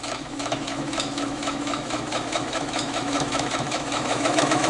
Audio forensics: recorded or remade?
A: remade